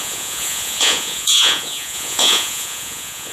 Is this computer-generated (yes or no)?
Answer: yes